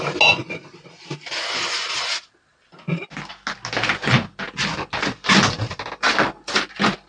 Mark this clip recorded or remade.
recorded